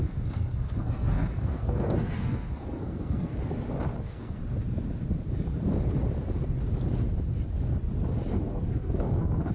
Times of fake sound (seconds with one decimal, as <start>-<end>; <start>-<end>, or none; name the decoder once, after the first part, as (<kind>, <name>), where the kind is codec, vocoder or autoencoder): 0.0-3.3 (codec, SNAC); 4.0-4.4; 8.4-9.5